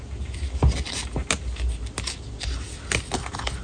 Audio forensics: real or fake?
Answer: real